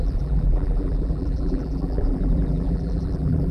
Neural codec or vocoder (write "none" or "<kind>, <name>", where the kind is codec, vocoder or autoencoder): vocoder, BigVGAN v2